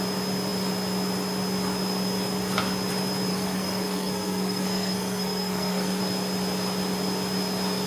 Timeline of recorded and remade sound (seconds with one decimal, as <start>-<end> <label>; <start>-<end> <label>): 0.0-3.3 recorded; 3.3-6.0 remade; 6.0-7.9 recorded